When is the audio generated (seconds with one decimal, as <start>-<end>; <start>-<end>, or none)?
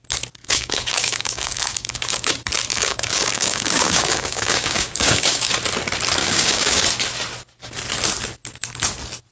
0.4-2.3; 2.7-5.5; 6.2-6.9